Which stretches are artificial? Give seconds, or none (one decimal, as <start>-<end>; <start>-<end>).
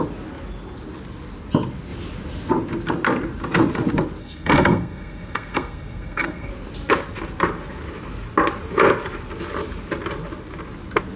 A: 4.2-6.5